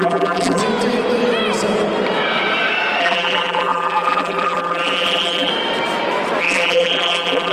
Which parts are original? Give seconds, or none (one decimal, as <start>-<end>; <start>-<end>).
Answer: 0.6-3.0; 5.5-6.4